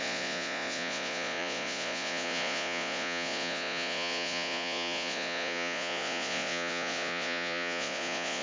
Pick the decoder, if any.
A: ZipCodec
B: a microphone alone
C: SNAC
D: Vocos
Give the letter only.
D